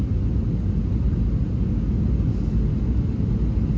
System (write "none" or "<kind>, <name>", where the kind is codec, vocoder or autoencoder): none